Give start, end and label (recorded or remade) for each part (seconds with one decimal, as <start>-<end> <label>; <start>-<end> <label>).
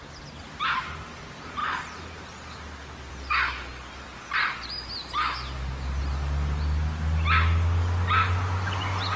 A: 0.0-9.2 recorded